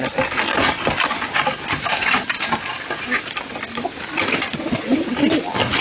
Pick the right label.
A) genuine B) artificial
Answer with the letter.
A